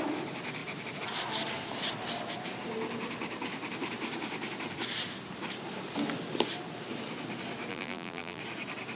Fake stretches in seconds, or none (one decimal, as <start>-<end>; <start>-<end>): 7.7-8.4